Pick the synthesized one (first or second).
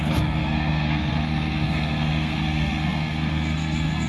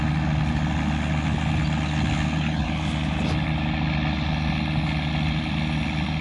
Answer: first